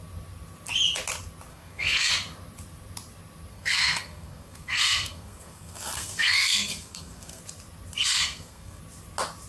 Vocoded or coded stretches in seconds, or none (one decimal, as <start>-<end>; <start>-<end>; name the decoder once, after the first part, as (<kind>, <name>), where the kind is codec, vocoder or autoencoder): 1.5-2.1 (codec, SNAC); 3.5-7.4; 8.0-8.8